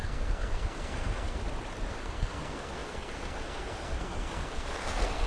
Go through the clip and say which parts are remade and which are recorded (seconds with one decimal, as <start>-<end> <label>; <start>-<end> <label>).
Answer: 0.0-1.4 remade; 1.4-1.9 recorded; 1.9-5.3 remade